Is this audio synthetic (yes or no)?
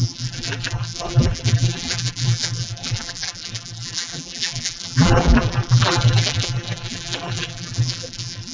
yes